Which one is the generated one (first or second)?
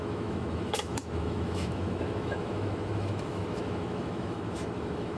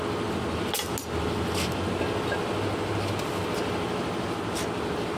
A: first